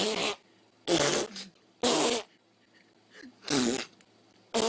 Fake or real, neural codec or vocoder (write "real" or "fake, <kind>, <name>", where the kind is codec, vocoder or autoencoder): real